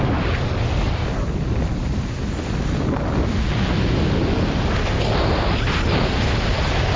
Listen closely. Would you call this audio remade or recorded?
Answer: recorded